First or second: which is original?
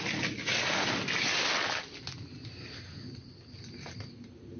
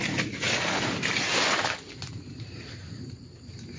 first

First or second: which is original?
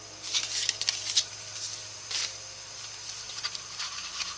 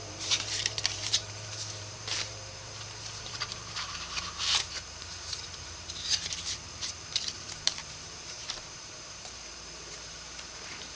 first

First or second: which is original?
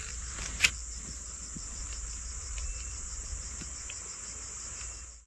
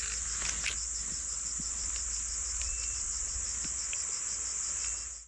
second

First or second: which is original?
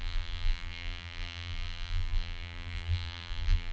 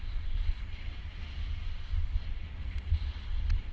second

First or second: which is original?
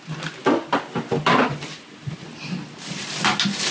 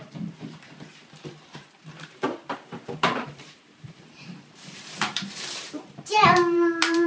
first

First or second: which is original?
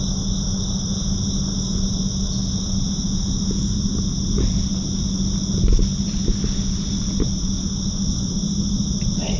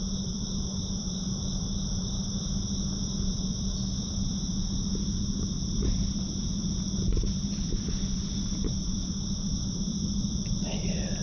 first